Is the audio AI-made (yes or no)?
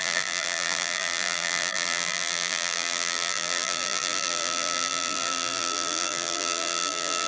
yes